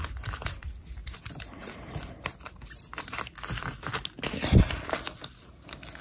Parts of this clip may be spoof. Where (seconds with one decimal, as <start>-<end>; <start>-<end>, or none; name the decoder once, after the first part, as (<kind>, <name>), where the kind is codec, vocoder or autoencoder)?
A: none